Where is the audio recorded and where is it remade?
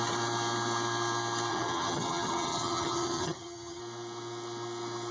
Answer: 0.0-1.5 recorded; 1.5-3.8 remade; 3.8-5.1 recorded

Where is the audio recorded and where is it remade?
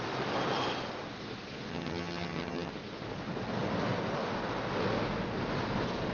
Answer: 0.0-1.7 recorded; 1.7-2.7 remade; 2.7-6.1 recorded